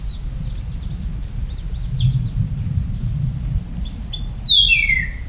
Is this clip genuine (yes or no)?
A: yes